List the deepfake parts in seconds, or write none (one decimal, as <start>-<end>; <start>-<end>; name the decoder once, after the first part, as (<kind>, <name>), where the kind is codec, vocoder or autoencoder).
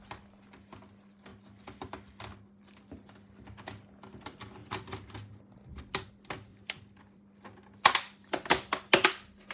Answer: 4.6-6.1 (vocoder, BigVGAN v2); 6.5-7.2